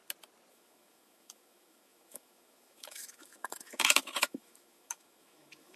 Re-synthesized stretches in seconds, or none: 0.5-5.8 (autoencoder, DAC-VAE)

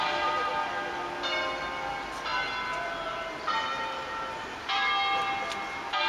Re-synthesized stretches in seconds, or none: 0.0-0.5 (vocoder, BigVGAN v2); 1.9-2.3

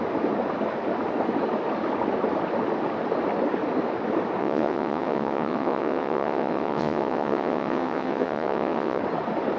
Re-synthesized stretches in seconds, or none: 4.4-9.0 (vocoder, WaveNeXt)